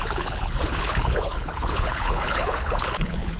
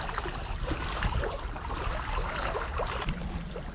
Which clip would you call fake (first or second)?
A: first